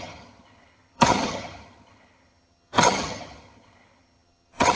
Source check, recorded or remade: remade